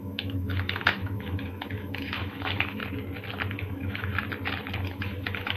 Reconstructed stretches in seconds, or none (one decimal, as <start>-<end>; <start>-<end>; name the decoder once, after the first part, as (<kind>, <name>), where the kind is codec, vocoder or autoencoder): 0.0-2.8 (autoencoder, DAC-VAE); 3.5-4.1; 4.8-5.6